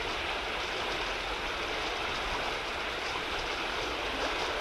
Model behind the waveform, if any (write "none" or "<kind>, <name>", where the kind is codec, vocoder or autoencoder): none